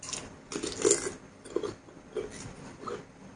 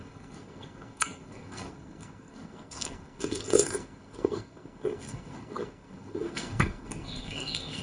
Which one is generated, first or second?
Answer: second